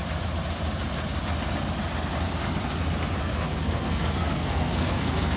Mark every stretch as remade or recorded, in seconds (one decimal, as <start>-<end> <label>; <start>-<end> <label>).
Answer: 0.0-3.2 recorded; 3.2-5.4 remade